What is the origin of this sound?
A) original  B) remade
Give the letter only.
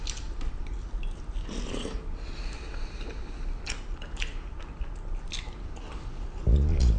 A